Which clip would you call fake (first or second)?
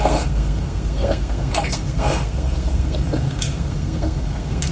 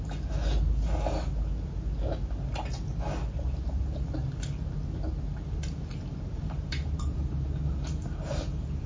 first